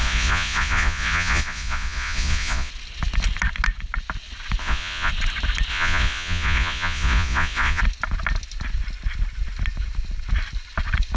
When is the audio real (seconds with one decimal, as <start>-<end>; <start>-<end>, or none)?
2.7-4.6; 5.1-5.7; 7.8-11.2